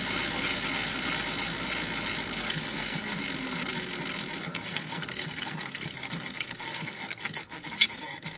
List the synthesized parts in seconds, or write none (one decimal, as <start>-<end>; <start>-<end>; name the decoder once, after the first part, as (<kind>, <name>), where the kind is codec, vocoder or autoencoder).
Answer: 2.4-3.2 (codec, SNAC); 4.4-8.4